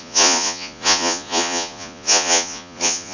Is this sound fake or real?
fake